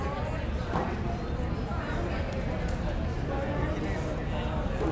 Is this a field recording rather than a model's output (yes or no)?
yes